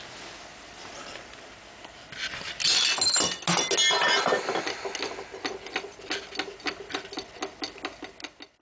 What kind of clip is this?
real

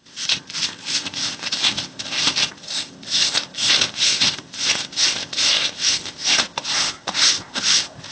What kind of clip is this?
fake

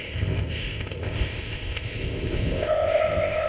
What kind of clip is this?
fake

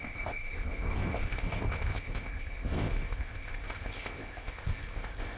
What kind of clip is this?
fake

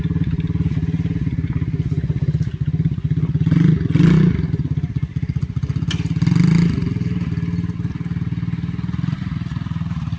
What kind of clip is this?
real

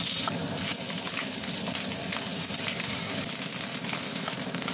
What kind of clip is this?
real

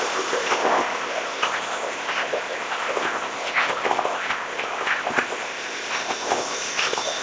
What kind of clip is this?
fake